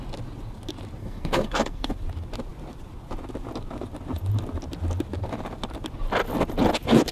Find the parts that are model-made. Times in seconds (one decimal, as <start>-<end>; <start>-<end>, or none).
1.0-1.9